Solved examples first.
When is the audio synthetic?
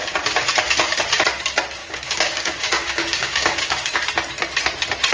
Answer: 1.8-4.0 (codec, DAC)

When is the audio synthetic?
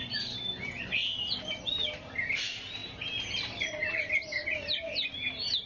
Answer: 2.8-4.1 (vocoder, BigVGAN v2)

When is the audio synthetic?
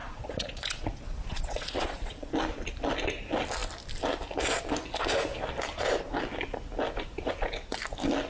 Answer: 0.0-2.3 (vocoder, Vocos)